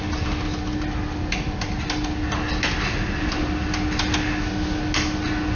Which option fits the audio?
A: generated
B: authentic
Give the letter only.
B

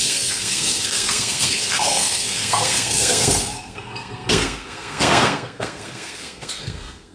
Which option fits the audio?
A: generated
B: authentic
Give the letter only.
A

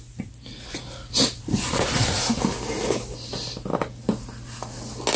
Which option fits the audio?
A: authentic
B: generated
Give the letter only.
A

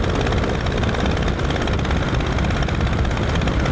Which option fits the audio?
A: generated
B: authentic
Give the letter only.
A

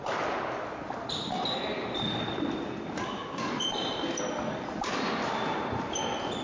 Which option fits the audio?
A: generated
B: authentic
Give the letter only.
B